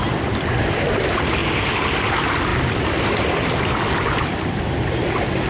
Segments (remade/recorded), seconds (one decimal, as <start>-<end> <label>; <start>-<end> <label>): 0.0-5.5 recorded